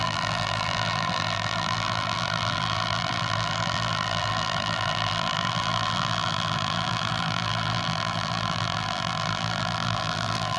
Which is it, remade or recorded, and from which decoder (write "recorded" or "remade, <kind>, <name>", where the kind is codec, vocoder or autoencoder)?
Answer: remade, vocoder, BigVGAN v2